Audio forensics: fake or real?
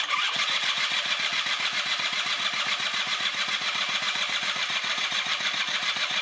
real